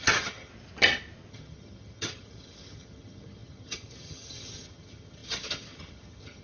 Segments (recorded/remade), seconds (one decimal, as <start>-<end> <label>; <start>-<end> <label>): 0.0-0.5 remade; 0.5-1.3 recorded; 1.3-6.4 remade